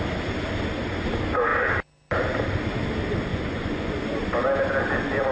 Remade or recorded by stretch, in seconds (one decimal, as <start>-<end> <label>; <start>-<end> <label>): 0.0-3.3 recorded; 3.3-3.9 remade; 3.9-5.3 recorded

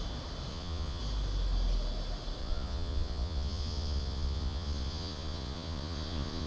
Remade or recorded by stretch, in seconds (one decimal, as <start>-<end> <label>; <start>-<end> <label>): 0.0-0.5 recorded; 0.5-1.0 remade; 1.0-2.4 recorded; 2.4-6.5 remade

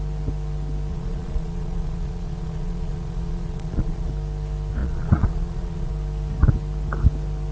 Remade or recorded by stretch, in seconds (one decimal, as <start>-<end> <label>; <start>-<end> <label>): 0.0-0.9 recorded; 0.9-4.1 remade; 4.1-4.8 recorded; 4.8-5.9 remade; 5.9-7.5 recorded

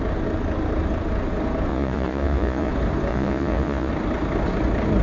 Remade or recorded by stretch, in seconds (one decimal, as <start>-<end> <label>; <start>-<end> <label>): 0.0-1.7 recorded; 1.7-2.7 remade; 2.7-3.1 recorded; 3.1-3.9 remade; 3.9-5.0 recorded

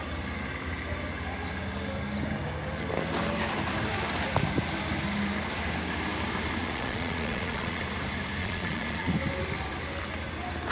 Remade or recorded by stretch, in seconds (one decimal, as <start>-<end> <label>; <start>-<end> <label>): 0.0-6.6 recorded; 6.6-7.8 remade; 7.8-8.4 recorded; 8.4-9.1 remade; 9.1-10.7 recorded

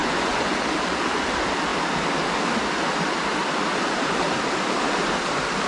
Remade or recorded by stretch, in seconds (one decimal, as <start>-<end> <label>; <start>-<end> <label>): 0.0-0.5 remade; 0.5-5.7 recorded

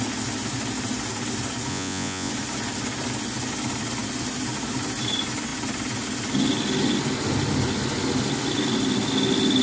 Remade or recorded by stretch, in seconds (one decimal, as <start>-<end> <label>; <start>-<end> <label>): 0.0-1.7 recorded; 1.7-2.3 remade; 2.3-9.6 recorded

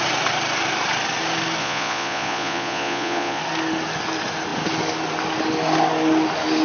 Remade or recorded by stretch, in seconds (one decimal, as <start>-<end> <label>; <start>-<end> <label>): 0.0-1.6 recorded; 1.6-3.4 remade; 3.4-6.6 recorded